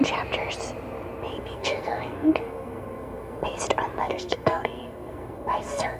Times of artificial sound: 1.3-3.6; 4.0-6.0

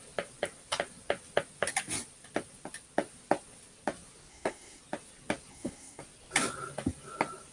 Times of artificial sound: 4.3-4.8; 5.5-6.0

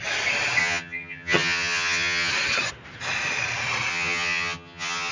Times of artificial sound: 0.6-2.3; 3.9-5.1

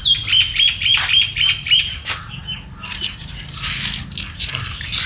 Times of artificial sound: none